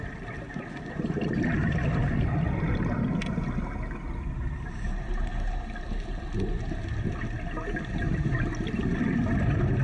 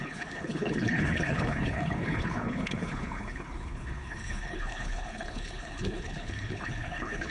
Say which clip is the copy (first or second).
second